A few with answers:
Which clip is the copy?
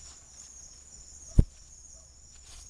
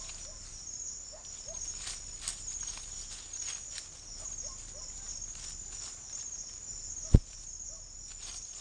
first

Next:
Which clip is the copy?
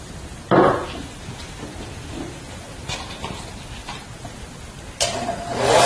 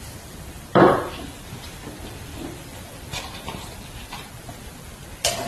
second